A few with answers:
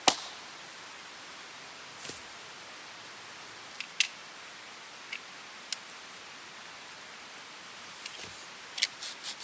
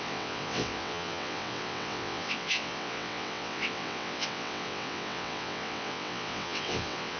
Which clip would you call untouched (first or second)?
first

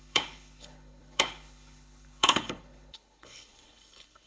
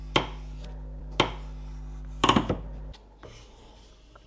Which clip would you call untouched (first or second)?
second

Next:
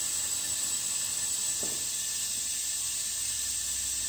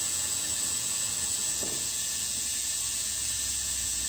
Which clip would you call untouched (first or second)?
first